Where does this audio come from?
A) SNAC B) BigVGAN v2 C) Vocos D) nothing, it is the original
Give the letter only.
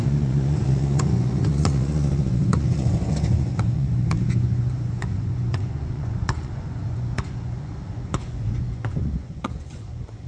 C